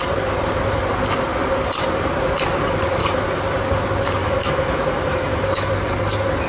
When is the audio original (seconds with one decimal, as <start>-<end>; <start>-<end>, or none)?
0.0-4.2; 5.7-6.5